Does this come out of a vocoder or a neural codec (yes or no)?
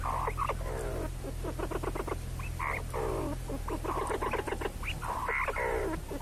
no